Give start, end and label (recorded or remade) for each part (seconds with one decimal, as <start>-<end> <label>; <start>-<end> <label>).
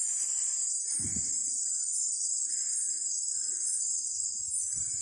0.0-1.4 recorded; 1.4-4.4 remade; 4.4-5.0 recorded